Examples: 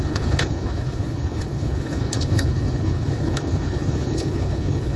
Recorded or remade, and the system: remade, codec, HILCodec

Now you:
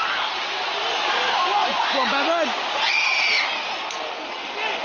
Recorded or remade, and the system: recorded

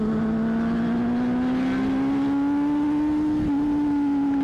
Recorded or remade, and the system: recorded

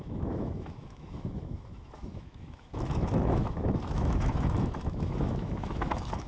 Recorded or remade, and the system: remade, autoencoder, DAC-VAE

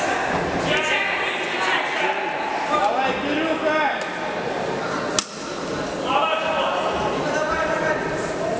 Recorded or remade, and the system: recorded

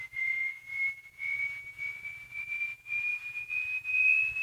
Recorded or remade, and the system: remade, vocoder, Vocos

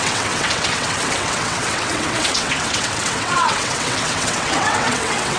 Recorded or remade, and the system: remade, vocoder, WaveNeXt